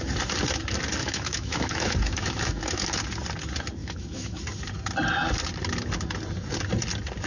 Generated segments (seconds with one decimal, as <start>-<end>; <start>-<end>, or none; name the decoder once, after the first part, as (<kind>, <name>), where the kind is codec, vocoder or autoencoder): 1.0-3.0 (autoencoder, DAC-VAE); 3.8-4.4